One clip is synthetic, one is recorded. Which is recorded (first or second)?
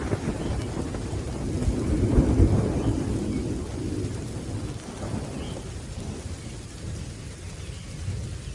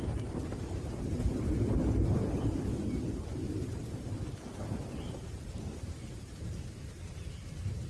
first